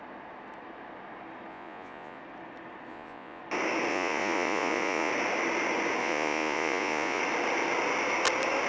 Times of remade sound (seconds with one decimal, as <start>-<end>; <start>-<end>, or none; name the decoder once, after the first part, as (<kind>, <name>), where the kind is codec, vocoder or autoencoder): 1.5-2.2 (vocoder, Vocos); 2.9-3.4; 3.9-5.1; 6.0-7.2